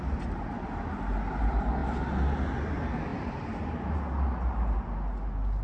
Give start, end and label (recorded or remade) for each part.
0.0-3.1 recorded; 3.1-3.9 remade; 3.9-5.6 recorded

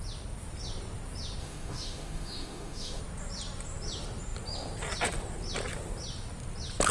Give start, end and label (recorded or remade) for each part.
0.0-1.4 recorded; 1.4-3.0 remade; 3.0-6.9 recorded